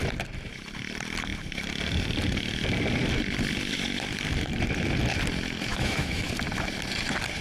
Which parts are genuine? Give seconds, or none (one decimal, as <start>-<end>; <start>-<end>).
0.0-5.7; 6.3-7.4

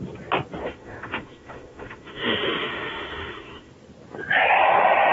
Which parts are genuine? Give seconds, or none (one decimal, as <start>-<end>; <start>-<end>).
0.0-0.6; 3.7-5.1

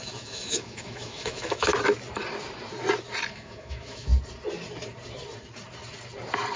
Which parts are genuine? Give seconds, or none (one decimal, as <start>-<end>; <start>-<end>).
1.7-3.3; 4.1-6.6